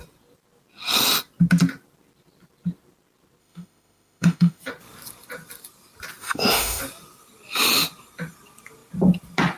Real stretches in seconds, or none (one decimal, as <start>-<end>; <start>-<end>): 0.0-3.4; 4.6-6.2; 6.8-9.6